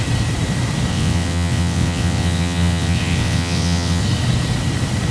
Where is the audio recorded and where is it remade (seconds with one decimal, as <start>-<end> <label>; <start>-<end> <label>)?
0.0-0.9 recorded; 0.9-4.0 remade; 4.0-5.1 recorded